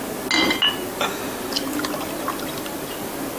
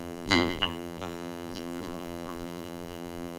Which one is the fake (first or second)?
second